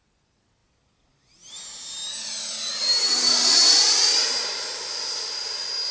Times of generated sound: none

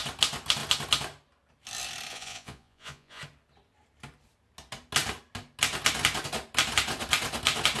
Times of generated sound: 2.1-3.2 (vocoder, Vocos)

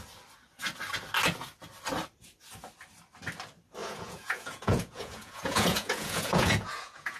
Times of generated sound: 3.8-7.2 (vocoder, Vocos)